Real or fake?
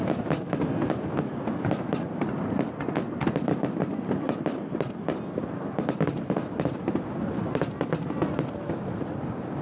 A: real